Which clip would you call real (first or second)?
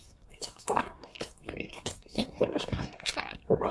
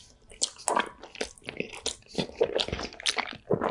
second